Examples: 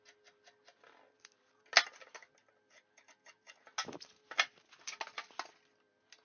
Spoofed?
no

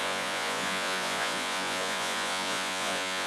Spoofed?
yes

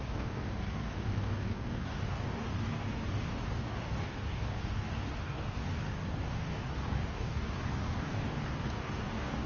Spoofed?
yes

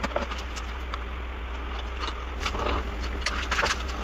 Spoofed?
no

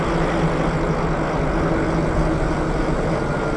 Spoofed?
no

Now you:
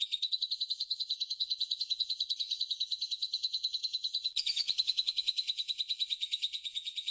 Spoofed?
yes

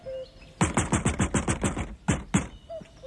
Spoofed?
no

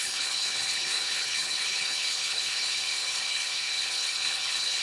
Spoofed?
yes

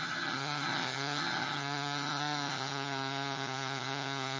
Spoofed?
yes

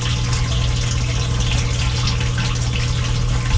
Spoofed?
no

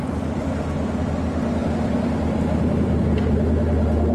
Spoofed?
no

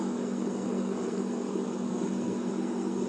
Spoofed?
yes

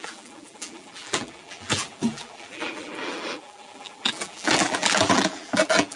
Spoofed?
yes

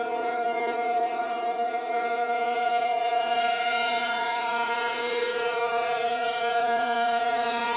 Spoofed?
yes